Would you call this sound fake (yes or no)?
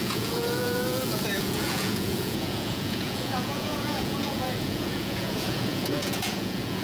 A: yes